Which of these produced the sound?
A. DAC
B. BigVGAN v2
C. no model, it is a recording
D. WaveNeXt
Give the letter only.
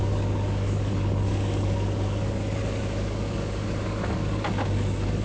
A